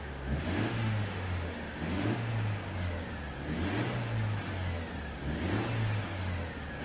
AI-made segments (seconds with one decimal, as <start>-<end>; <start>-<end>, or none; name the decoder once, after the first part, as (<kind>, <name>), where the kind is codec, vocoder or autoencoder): 0.0-2.3 (autoencoder, DAC-VAE)